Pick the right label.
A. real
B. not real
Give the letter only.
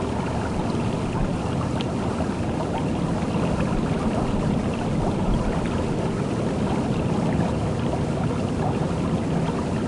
A